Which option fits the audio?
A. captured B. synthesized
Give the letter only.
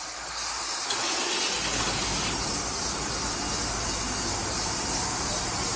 A